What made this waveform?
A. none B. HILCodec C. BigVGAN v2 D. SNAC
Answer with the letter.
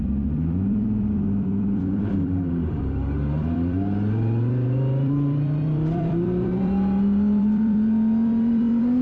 C